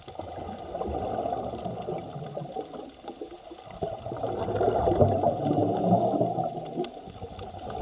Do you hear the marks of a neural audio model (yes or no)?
no